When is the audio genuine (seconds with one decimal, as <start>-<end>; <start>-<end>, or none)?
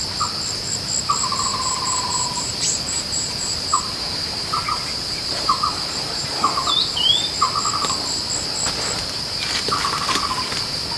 0.0-1.5; 6.7-11.0